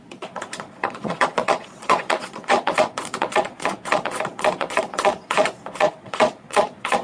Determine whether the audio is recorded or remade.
remade